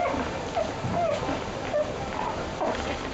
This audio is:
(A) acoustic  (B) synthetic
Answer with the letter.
A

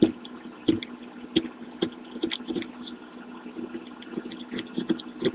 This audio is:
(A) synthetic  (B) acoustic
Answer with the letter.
B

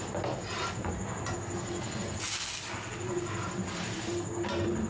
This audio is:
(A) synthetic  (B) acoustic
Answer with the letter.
B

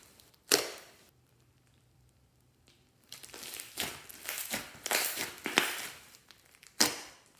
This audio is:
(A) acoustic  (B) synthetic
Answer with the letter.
B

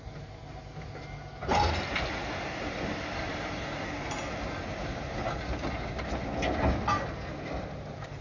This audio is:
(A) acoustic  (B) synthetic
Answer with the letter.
A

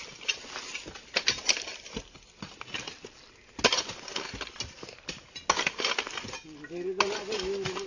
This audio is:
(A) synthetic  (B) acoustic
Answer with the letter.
B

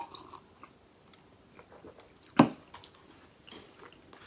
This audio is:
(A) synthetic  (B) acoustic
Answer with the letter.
B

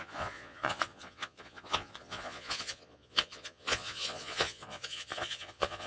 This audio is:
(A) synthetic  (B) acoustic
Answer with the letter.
A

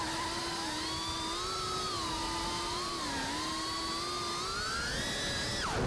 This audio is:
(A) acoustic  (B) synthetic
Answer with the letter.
A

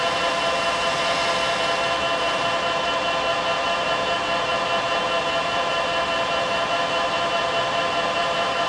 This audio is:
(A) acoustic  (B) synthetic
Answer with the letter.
B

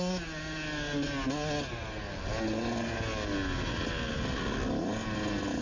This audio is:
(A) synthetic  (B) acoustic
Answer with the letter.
B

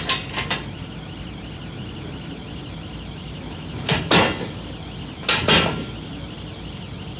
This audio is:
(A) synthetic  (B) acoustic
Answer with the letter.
B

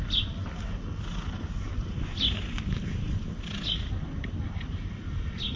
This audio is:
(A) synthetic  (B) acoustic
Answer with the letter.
B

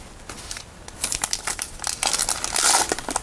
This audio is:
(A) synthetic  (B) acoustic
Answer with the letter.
B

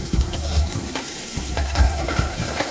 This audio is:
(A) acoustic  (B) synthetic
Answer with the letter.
B